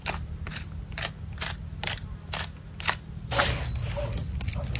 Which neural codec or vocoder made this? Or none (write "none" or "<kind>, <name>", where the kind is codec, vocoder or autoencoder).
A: none